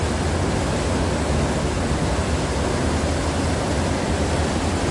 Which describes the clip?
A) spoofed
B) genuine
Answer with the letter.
B